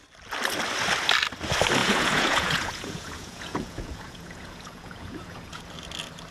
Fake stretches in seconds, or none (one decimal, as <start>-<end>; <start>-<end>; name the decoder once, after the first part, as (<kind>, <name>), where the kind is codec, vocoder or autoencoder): 1.8-5.6 (vocoder, Vocos)